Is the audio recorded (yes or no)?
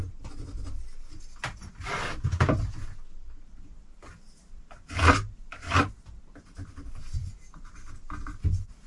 yes